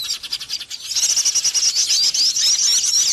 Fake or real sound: real